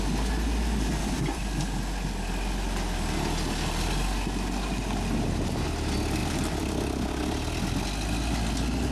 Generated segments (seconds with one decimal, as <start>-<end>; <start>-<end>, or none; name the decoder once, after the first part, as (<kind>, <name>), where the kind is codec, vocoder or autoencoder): 0.9-1.4 (vocoder, BigVGAN v2); 6.2-7.1